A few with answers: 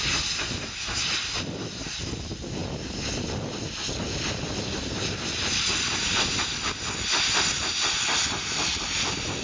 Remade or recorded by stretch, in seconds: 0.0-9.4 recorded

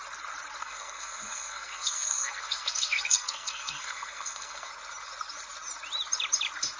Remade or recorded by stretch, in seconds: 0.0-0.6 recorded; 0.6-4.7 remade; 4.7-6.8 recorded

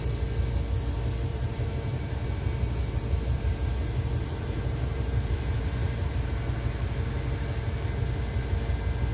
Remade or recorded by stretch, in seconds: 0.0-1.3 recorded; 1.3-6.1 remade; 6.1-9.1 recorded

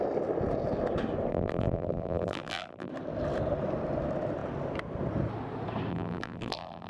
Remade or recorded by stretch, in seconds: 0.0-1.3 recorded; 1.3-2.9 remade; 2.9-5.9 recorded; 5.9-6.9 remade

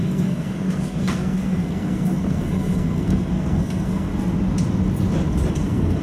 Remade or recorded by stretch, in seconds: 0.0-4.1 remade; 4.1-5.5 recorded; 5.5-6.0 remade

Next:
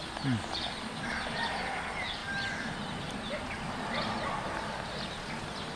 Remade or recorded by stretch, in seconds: 0.0-5.8 recorded

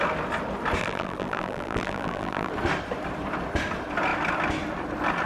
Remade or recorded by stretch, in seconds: 0.0-0.8 recorded; 0.8-2.5 remade; 2.5-5.3 recorded

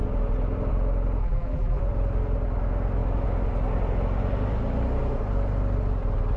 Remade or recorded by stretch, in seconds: 0.0-1.2 recorded; 1.2-1.8 remade; 1.8-6.4 recorded